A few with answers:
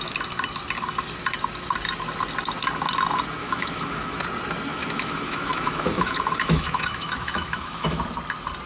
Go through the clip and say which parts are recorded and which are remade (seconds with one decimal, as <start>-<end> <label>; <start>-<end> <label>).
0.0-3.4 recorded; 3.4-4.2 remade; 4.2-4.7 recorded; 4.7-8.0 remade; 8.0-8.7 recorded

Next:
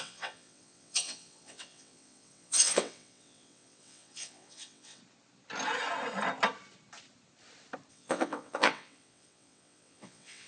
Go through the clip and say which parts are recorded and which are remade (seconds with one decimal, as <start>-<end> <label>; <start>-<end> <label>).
0.0-5.0 remade; 5.0-7.9 recorded; 7.9-10.5 remade

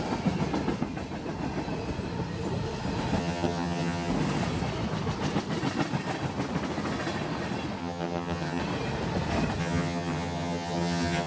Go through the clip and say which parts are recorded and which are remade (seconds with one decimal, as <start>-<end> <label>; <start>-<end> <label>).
0.0-3.2 recorded; 3.2-4.1 remade; 4.1-7.8 recorded; 7.8-8.6 remade; 8.6-9.6 recorded; 9.6-11.3 remade